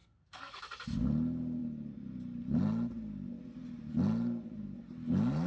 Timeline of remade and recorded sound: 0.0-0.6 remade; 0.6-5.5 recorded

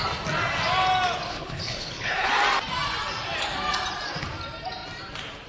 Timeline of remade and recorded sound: 0.0-1.3 recorded; 1.3-2.3 remade; 2.3-5.5 recorded

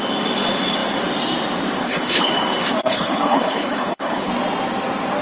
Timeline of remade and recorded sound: 0.0-1.8 recorded; 1.8-2.3 remade; 2.3-2.8 recorded; 2.8-4.3 remade; 4.3-5.2 recorded

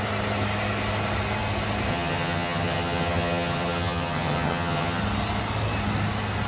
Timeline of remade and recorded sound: 0.0-1.9 recorded; 1.9-5.0 remade; 5.0-6.5 recorded

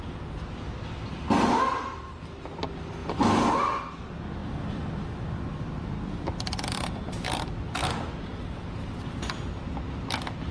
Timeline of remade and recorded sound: 0.0-10.5 recorded

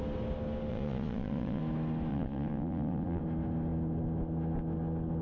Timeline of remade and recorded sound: 0.0-0.7 recorded; 0.7-1.6 remade; 1.6-2.1 recorded; 2.1-3.2 remade; 3.2-5.2 recorded

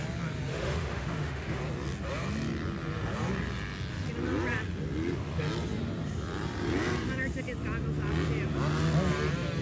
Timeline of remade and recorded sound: 0.0-0.5 recorded; 0.5-1.6 remade; 1.6-9.6 recorded

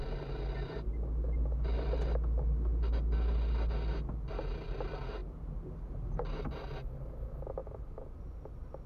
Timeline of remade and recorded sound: 0.0-8.9 recorded